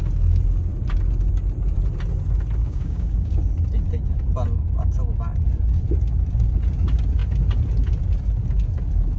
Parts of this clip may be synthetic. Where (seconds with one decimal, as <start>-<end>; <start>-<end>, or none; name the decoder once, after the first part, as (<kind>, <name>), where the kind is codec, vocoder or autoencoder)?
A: 2.6-3.3 (codec, DAC)